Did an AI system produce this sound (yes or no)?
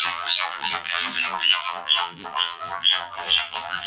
yes